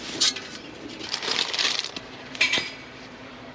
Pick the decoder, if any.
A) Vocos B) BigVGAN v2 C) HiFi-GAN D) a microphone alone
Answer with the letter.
B